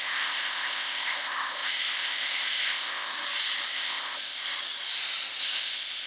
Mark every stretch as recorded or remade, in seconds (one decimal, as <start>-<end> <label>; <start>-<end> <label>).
0.0-3.1 remade; 3.1-3.7 recorded; 3.7-4.4 remade; 4.4-5.4 recorded; 5.4-6.1 remade